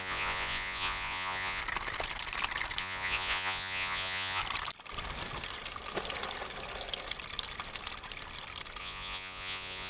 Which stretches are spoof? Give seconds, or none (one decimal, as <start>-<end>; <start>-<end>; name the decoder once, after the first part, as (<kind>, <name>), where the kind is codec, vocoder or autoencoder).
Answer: 0.0-1.6 (vocoder, Vocos); 2.8-4.4; 8.8-9.9